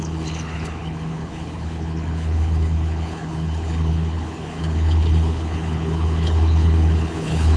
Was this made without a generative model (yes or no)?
no